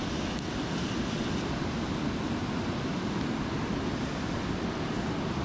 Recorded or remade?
recorded